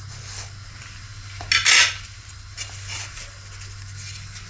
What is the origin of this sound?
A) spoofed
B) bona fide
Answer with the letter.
B